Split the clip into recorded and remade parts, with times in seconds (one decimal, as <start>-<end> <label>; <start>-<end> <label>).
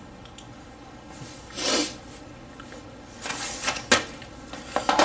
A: 0.0-5.0 recorded